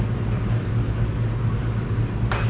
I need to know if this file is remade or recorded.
recorded